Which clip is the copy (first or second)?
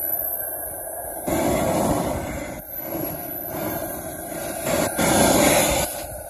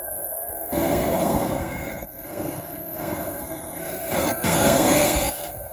second